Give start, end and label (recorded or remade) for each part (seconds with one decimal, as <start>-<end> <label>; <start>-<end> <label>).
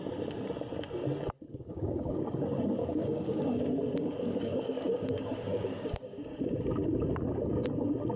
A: 0.0-1.5 recorded; 1.5-2.2 remade; 2.2-2.8 recorded; 2.8-3.6 remade; 3.6-4.0 recorded; 4.0-6.2 remade; 6.2-8.2 recorded